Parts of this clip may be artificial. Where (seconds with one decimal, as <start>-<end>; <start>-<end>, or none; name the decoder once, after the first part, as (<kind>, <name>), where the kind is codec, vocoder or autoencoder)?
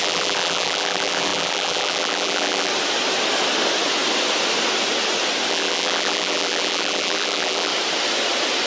0.0-2.7 (vocoder, BigVGAN v2); 5.5-7.7